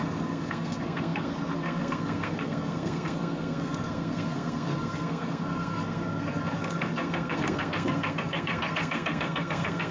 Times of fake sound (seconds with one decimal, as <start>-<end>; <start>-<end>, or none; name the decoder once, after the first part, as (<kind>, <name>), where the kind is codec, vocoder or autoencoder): 0.0-9.9 (codec, SNAC)